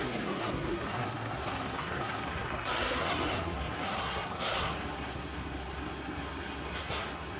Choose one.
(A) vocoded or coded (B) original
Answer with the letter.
A